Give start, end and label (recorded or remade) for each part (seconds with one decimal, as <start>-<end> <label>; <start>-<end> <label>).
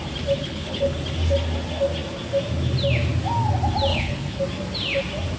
0.0-0.4 recorded; 0.4-0.9 remade; 0.9-3.9 recorded; 3.9-4.4 remade; 4.4-5.4 recorded